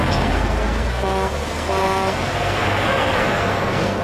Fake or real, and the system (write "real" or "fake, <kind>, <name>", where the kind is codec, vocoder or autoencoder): fake, codec, SNAC